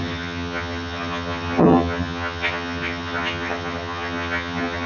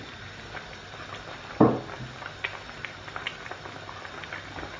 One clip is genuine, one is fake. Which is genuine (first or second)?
second